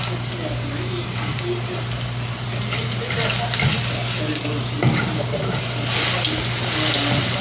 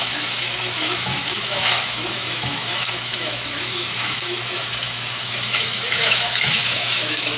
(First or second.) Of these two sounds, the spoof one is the second